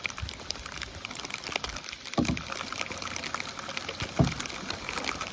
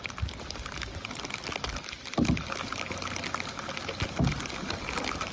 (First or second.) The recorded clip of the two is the second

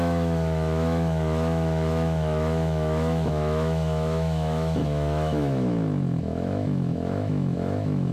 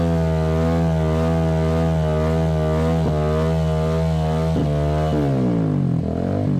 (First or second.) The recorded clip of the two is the second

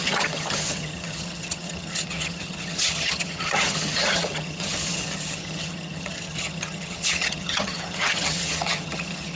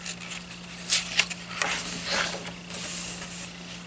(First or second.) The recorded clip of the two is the second